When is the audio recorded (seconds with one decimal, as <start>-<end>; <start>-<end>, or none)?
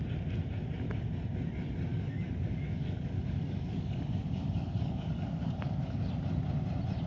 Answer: 0.0-1.9; 6.0-7.1